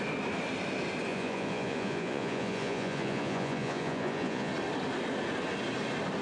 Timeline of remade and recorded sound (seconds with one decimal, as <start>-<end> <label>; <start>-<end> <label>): 0.0-1.1 recorded; 1.1-4.5 remade; 4.5-6.2 recorded

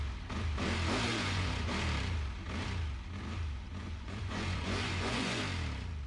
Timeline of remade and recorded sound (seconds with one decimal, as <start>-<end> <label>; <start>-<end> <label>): 0.0-1.1 recorded; 1.1-1.7 remade; 1.7-3.8 recorded; 3.8-5.4 remade; 5.4-6.1 recorded